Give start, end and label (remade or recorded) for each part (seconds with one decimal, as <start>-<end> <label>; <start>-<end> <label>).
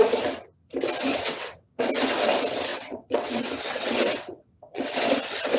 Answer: 0.0-1.1 recorded; 1.1-1.8 remade; 1.8-2.7 recorded; 2.7-4.8 remade; 4.8-5.6 recorded